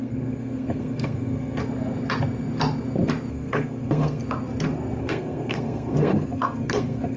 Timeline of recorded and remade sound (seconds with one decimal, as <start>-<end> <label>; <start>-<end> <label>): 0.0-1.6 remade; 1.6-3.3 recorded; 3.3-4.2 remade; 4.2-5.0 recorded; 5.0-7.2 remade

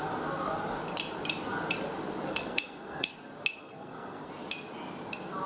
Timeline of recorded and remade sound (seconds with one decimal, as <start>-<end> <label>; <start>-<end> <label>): 0.0-2.3 recorded; 2.3-3.1 remade; 3.1-3.6 recorded; 3.6-4.3 remade; 4.3-5.5 recorded

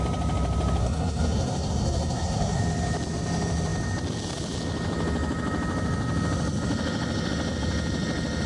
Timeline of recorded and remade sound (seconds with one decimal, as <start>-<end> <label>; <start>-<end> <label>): 0.0-0.8 recorded; 0.8-2.6 remade; 2.6-8.5 recorded

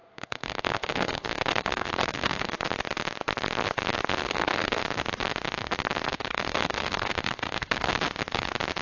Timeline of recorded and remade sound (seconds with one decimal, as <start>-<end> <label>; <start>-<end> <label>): 0.0-2.5 remade; 2.5-4.2 recorded; 4.2-4.8 remade; 4.8-6.1 recorded; 6.1-8.0 remade; 8.0-8.8 recorded